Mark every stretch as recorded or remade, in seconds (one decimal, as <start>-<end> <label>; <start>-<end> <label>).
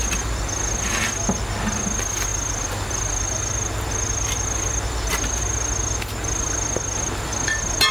0.0-2.3 recorded; 2.3-5.4 remade; 5.4-7.9 recorded